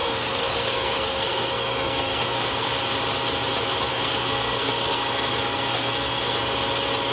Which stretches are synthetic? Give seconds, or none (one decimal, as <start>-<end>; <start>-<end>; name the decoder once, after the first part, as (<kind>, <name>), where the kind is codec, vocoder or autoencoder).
0.0-2.7 (codec, SNAC); 3.9-6.4